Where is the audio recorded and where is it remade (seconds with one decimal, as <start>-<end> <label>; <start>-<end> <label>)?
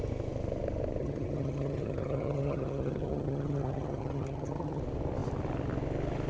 0.0-1.0 recorded; 1.0-4.8 remade; 4.8-6.3 recorded